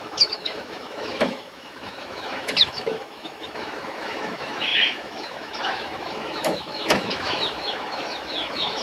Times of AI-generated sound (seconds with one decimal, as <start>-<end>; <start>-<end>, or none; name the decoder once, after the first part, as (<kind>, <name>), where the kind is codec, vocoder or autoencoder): 0.0-8.8 (autoencoder, DAC-VAE)